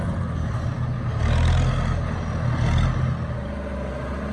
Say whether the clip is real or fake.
real